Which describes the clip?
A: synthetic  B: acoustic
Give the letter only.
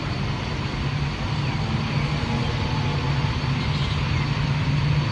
B